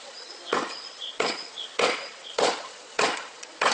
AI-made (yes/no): yes